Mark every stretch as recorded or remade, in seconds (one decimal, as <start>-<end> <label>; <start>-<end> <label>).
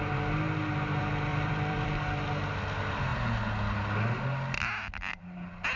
0.0-1.3 recorded; 1.3-1.9 remade; 1.9-5.8 recorded